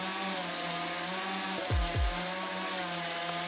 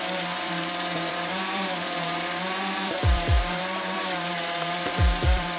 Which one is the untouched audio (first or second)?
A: first